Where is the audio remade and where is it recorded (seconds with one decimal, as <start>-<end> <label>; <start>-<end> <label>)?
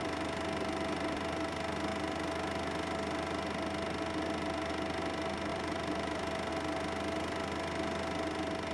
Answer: 0.0-5.5 recorded; 5.5-6.5 remade; 6.5-8.7 recorded